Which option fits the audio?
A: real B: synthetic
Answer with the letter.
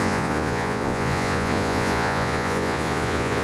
B